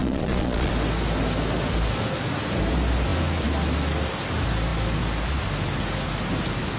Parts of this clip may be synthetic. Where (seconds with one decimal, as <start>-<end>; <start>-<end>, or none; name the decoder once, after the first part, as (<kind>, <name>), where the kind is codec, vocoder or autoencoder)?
0.0-0.7 (vocoder, Vocos)